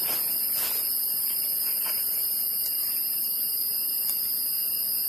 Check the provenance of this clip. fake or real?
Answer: real